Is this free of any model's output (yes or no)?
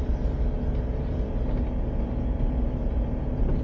yes